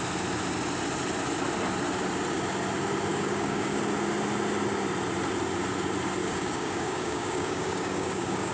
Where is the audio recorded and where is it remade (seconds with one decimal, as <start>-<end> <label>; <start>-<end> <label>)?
0.0-3.1 recorded; 3.1-3.8 remade; 3.8-6.2 recorded; 6.2-8.5 remade